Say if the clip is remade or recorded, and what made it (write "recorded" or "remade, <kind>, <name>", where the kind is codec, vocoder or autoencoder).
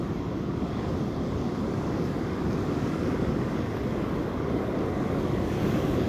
remade, codec, DAC